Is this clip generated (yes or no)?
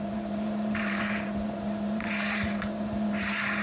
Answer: yes